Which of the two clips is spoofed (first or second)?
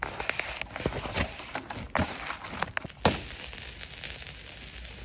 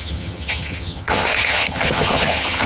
second